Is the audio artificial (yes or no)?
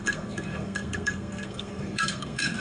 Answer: yes